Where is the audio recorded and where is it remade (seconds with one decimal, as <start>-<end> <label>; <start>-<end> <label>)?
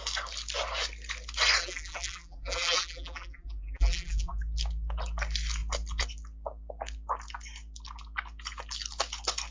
0.0-1.6 recorded; 1.6-4.4 remade; 4.4-9.5 recorded